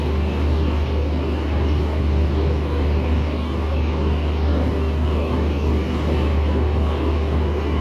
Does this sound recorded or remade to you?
remade